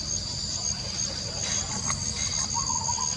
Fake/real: real